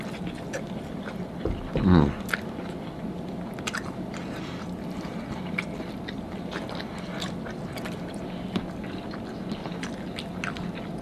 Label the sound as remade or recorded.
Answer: recorded